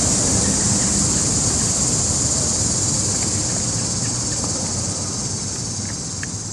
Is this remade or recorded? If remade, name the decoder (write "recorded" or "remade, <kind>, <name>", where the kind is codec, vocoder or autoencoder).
recorded